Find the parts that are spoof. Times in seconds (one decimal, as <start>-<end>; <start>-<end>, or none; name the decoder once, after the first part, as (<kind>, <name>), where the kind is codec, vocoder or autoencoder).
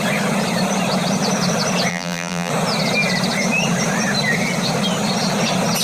1.9-2.5 (vocoder, BigVGAN v2)